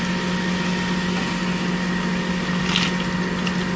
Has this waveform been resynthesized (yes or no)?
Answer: no